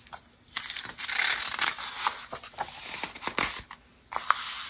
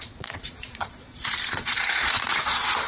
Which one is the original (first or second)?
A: first